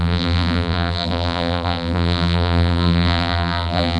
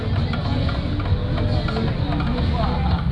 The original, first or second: second